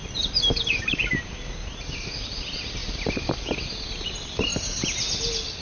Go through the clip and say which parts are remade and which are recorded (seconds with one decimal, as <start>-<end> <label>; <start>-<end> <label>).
0.0-5.6 recorded